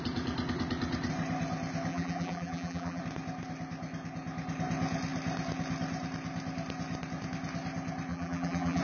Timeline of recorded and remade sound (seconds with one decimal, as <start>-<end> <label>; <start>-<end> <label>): 0.0-1.9 recorded; 1.9-3.0 remade; 3.0-8.1 recorded; 8.1-8.8 remade